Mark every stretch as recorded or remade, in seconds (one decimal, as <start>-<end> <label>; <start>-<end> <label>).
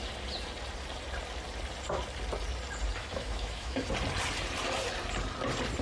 0.0-3.0 recorded; 3.0-3.9 remade; 3.9-5.8 recorded